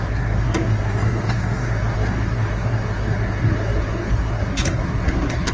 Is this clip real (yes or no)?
no